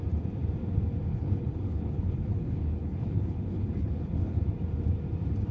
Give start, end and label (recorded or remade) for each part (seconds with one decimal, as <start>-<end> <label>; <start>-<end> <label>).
0.0-1.1 recorded; 1.1-4.4 remade; 4.4-5.5 recorded